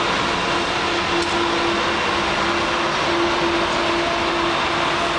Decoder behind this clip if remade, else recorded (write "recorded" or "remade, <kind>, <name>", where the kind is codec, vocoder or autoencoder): recorded